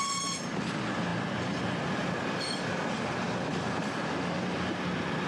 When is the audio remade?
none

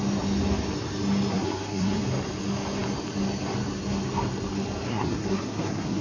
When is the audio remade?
1.3-2.0; 4.9-6.0

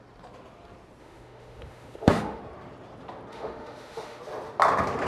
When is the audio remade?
1.0-2.4; 3.3-4.2

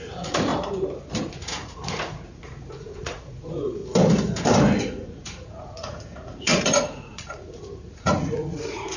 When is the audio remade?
0.0-0.5; 1.2-3.8; 4.8-9.0

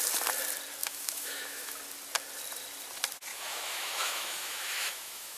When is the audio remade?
0.8-1.8; 3.3-5.4

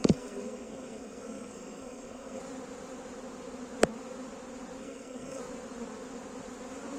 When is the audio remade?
0.0-2.4; 4.8-5.4

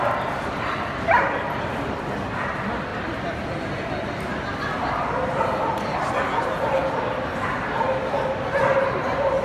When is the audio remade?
none